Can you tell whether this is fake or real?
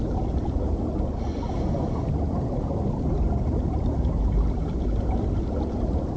real